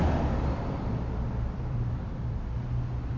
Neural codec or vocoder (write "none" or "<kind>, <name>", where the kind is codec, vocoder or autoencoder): vocoder, BigVGAN v2